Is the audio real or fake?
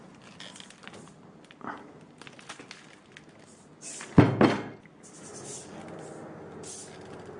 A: real